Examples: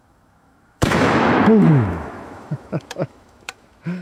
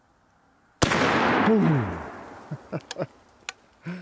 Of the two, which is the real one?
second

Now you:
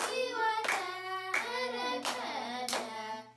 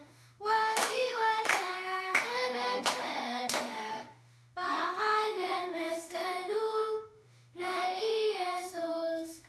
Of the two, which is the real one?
first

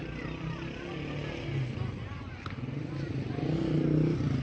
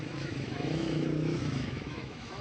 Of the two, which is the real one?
first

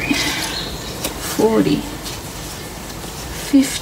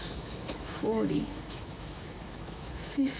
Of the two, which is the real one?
first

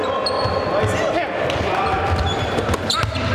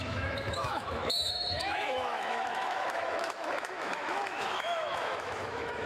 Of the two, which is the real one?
first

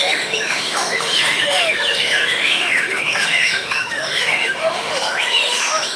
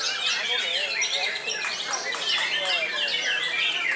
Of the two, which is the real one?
second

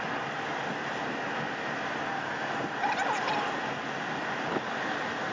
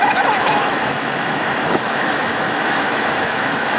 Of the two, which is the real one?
first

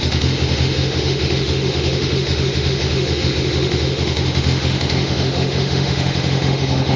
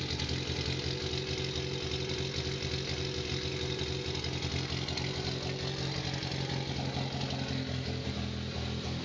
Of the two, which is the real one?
second